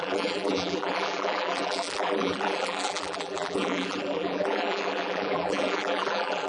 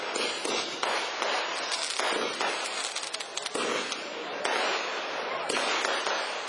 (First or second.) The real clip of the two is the second